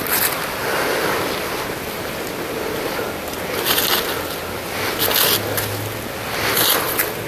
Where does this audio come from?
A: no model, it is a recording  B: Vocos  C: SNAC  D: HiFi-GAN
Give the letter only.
A